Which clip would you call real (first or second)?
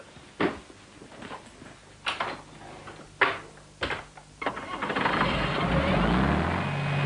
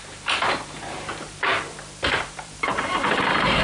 first